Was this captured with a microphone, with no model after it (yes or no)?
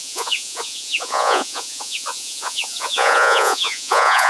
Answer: no